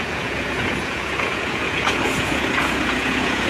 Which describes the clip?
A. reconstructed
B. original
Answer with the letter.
A